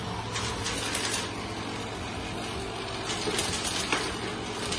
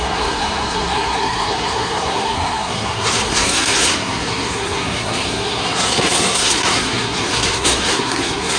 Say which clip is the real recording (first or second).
first